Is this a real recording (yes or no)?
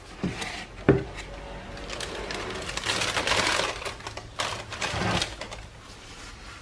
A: yes